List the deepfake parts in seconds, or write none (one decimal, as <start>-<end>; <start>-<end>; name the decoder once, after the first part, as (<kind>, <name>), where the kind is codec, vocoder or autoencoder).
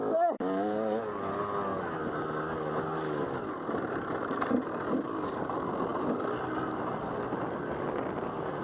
none